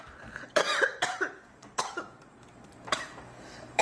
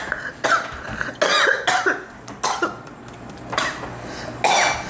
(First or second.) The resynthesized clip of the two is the first